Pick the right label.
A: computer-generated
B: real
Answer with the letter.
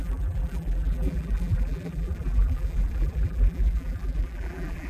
A